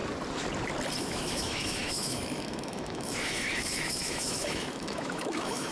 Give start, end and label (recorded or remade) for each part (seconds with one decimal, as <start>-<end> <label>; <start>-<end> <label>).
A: 0.0-1.0 recorded; 1.0-5.7 remade